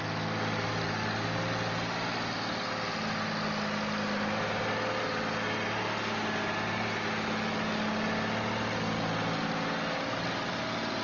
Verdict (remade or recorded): recorded